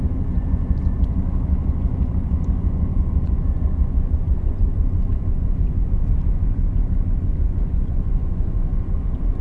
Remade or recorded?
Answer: remade